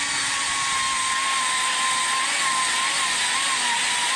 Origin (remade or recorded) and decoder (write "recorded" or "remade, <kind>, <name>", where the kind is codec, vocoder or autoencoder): recorded